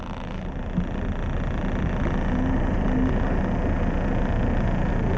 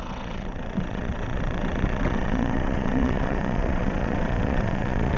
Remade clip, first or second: second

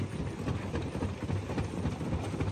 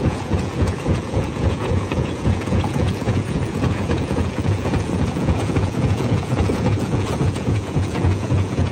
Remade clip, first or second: second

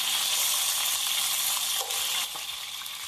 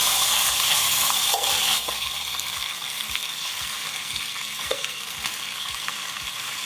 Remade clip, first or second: second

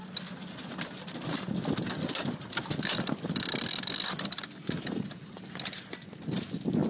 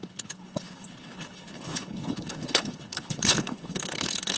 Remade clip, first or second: second